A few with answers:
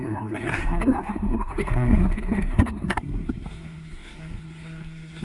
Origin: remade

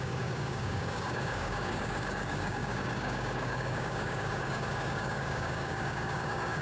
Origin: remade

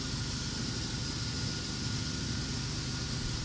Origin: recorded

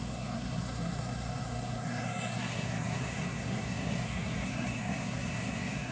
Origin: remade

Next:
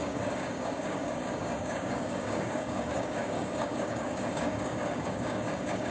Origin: remade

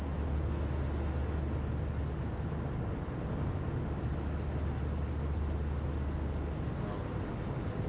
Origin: recorded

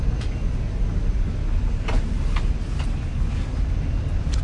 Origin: recorded